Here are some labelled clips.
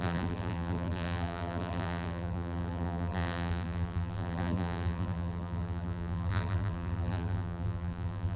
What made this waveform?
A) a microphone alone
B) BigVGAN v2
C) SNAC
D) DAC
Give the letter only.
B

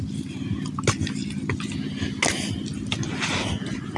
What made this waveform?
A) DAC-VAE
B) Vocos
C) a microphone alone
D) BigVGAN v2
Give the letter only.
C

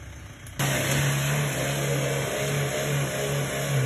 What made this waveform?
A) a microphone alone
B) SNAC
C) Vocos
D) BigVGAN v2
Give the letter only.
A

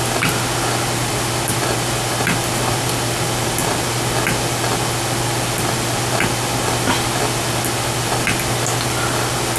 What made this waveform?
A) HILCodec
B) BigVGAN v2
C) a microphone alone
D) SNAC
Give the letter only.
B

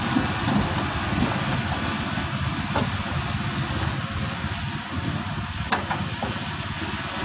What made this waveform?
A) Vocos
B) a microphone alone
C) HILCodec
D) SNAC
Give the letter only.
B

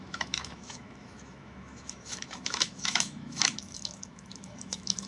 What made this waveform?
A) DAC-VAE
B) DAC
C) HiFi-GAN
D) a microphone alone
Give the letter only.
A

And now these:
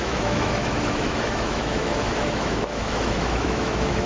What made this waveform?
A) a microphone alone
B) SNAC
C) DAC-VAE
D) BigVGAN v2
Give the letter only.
C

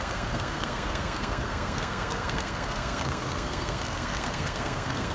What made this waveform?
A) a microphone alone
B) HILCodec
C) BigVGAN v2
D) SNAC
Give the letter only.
D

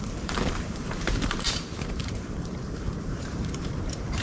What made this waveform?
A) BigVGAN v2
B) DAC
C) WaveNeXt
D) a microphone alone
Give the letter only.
A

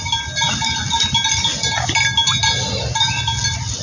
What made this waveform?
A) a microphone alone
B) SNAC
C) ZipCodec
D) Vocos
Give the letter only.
A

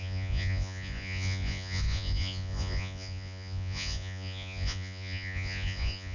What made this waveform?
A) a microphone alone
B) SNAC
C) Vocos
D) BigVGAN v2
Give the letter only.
C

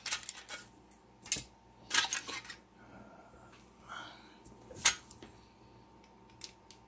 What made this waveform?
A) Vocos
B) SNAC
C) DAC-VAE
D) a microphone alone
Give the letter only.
D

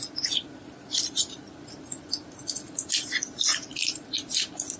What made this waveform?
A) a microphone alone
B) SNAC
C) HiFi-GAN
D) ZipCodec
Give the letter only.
A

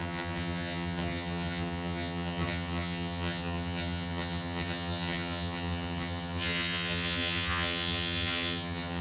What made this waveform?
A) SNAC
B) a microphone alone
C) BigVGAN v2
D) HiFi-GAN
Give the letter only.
D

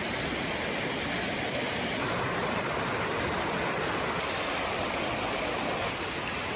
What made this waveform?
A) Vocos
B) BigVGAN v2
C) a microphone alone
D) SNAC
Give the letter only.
C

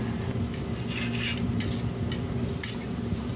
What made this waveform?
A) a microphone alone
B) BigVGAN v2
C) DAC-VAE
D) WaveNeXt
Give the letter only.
A